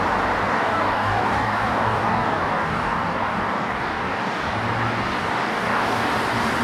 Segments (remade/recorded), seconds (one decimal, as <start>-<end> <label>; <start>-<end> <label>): 0.0-0.5 recorded; 0.5-4.5 remade; 4.5-5.2 recorded; 5.2-6.1 remade; 6.1-6.6 recorded